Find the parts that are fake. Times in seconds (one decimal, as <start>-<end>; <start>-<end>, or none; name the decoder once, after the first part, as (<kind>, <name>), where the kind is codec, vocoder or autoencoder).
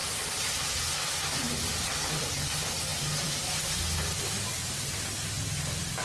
0.0-2.1 (vocoder, BigVGAN v2); 2.9-3.6